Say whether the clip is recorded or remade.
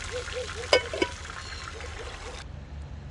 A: recorded